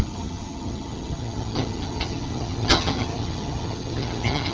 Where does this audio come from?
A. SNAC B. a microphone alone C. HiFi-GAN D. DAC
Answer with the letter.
C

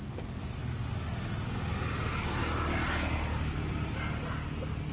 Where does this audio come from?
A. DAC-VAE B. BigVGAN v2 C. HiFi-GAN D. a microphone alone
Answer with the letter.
D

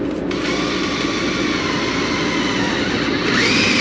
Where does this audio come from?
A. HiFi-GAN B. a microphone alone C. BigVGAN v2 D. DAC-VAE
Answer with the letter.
B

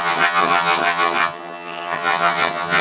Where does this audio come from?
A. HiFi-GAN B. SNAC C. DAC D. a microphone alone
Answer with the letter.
A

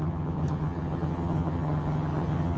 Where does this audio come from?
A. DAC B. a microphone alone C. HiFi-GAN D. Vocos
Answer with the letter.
C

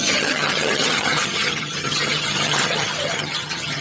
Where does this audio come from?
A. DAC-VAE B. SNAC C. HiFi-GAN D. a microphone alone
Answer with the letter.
C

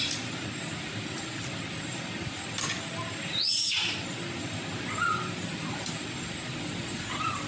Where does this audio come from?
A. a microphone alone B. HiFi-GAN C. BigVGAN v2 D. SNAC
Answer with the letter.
A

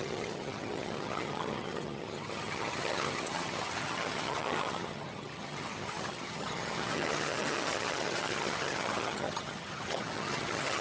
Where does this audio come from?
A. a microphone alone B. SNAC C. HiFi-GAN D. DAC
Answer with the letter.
C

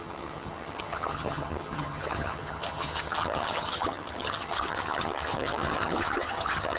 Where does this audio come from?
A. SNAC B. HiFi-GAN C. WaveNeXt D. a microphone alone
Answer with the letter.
B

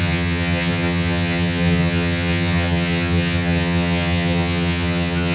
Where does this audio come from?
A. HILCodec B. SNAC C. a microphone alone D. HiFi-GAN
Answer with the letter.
D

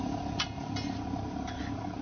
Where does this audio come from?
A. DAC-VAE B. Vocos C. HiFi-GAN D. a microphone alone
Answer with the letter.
D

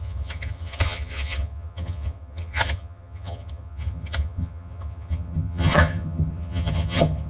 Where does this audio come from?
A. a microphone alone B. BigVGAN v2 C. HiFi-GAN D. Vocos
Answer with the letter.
C